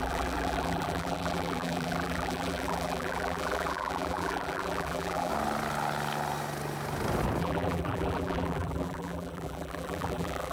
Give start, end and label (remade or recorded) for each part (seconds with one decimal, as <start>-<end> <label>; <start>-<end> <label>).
0.0-5.3 remade; 5.3-7.4 recorded; 7.4-10.5 remade